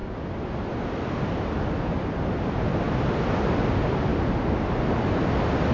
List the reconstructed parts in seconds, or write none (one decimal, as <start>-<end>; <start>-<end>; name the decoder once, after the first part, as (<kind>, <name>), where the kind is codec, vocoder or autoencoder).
none